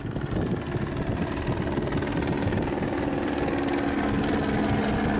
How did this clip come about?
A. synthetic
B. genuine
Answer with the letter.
B